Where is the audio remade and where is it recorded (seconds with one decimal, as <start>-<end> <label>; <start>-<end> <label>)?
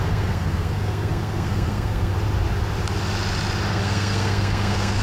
0.0-2.1 remade; 2.1-3.7 recorded; 3.7-5.0 remade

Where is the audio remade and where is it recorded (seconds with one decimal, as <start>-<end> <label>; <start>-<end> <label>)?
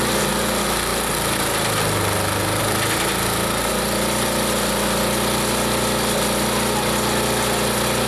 0.0-8.1 recorded